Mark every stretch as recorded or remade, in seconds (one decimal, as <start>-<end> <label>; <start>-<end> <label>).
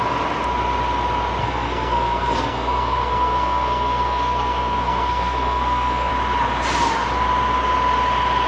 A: 0.0-1.4 recorded; 1.4-6.1 remade; 6.1-8.5 recorded